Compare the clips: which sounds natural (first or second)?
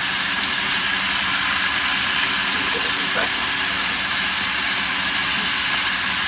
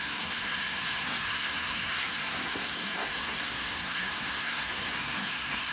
first